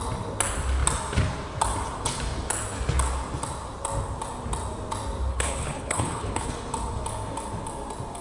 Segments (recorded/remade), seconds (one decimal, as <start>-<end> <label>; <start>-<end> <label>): 0.0-5.3 recorded; 5.3-6.5 remade; 6.5-8.2 recorded